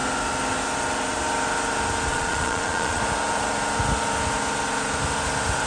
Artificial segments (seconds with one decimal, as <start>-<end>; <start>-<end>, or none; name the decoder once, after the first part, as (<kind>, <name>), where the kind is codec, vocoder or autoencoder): 2.1-3.0 (vocoder, Vocos)